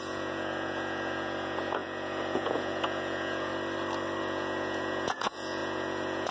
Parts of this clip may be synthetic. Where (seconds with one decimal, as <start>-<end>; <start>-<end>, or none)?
0.0-3.5; 4.2-6.3